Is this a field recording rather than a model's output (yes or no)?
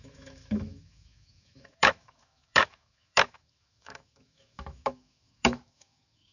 no